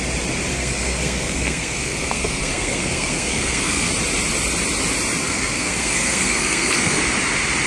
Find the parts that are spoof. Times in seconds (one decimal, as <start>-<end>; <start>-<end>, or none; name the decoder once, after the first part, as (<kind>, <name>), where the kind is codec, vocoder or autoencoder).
0.5-3.9 (codec, SNAC); 5.2-7.0